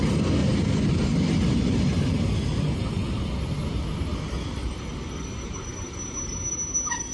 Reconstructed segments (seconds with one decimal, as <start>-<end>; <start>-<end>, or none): none